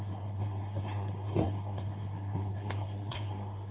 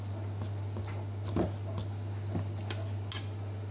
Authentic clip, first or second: second